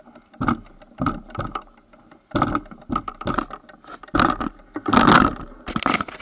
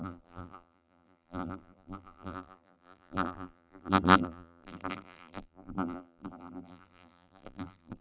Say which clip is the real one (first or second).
first